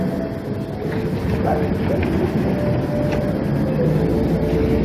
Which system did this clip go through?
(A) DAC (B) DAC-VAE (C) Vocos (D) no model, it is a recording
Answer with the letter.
D